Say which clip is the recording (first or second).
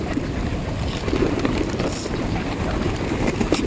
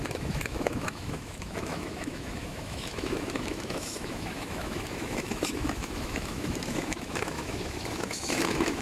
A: first